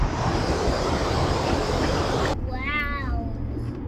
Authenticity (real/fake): real